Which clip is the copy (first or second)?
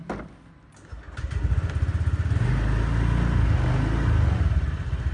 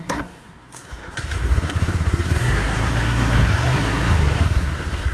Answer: second